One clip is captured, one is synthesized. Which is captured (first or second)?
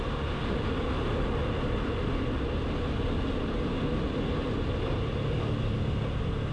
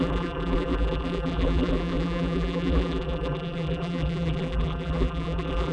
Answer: first